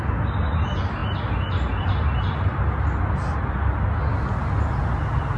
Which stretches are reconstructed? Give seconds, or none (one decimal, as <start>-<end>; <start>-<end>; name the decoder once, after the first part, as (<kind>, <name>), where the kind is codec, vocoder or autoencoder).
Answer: none